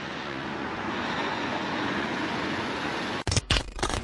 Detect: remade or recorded remade